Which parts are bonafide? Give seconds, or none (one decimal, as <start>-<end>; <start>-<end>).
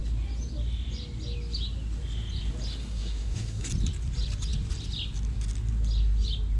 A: 0.0-2.8; 3.7-6.6